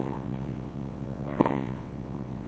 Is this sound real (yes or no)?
no